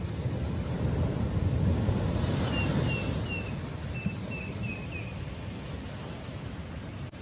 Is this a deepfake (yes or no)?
no